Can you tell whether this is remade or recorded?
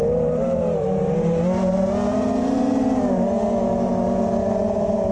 remade